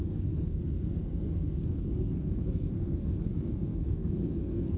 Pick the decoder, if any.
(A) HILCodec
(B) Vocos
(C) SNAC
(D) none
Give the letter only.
C